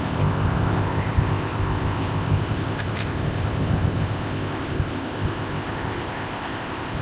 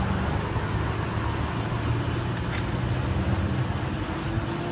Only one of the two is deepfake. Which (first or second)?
first